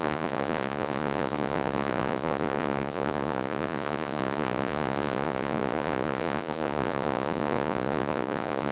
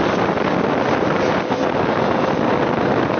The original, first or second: second